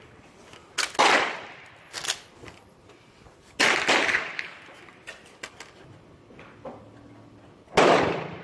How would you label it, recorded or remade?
recorded